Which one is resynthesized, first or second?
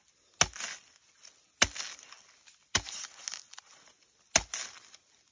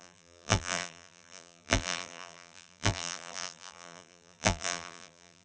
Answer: second